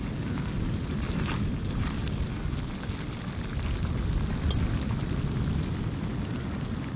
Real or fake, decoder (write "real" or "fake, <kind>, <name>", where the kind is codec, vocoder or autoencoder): real